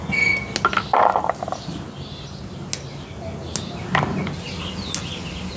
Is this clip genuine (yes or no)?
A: yes